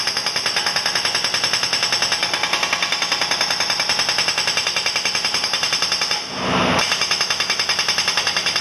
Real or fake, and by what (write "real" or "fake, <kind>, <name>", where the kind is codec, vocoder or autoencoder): real